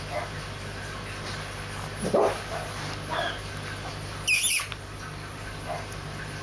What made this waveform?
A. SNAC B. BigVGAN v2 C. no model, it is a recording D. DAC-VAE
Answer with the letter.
C